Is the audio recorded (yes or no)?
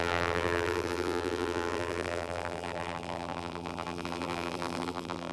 no